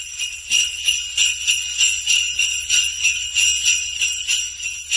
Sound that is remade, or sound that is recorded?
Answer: recorded